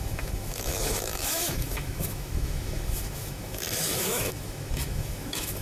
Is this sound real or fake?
fake